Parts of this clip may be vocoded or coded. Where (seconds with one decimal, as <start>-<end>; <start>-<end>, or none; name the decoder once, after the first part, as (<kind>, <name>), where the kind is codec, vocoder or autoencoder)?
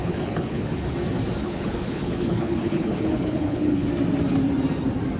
0.0-0.9 (codec, HILCodec); 1.4-3.9